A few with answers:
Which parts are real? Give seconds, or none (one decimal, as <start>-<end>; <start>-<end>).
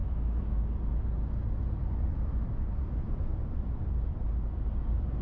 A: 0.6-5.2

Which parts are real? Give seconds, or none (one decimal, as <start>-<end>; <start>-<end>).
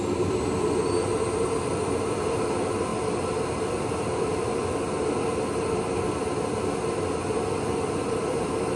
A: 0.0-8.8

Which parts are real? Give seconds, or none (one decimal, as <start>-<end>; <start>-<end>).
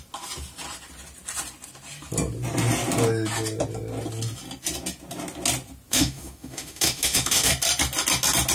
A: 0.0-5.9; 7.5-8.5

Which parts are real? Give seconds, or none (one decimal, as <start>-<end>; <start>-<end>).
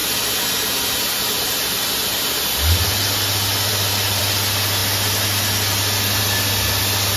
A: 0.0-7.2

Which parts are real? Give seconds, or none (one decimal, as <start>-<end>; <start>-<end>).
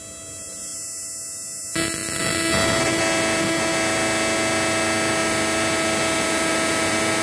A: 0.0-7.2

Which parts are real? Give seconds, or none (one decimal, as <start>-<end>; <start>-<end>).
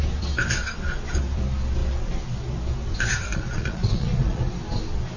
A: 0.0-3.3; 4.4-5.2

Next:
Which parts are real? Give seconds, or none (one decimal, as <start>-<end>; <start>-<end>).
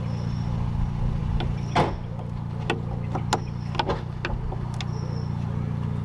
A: 0.0-6.0